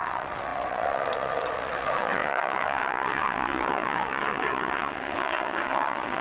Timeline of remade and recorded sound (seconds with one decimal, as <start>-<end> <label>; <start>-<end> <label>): 0.0-6.2 remade